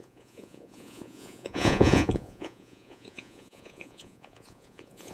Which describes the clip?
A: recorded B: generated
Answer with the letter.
B